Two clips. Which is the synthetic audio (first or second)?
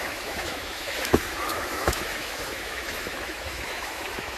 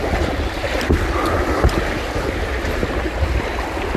first